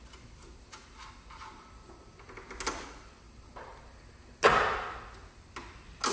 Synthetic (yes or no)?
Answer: no